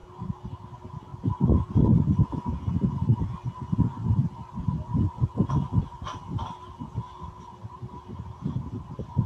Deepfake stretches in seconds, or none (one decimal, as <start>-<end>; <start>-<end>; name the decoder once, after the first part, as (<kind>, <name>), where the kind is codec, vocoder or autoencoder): 7.6-9.3 (vocoder, BigVGAN v2)